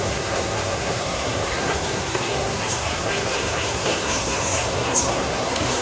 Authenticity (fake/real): fake